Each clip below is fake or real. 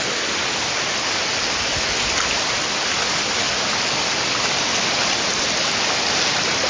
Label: real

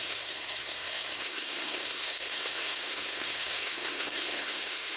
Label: fake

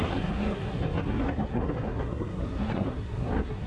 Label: fake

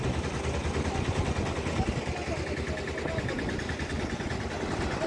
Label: real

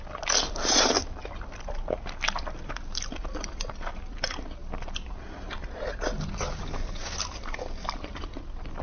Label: real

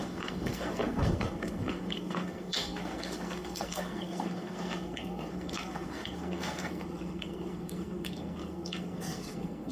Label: fake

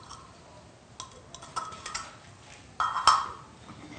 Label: real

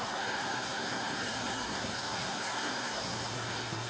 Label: fake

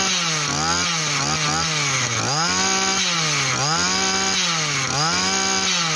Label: real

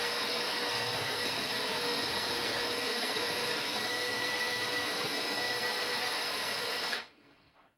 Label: fake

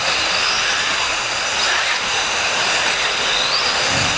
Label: real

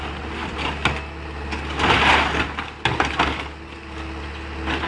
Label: real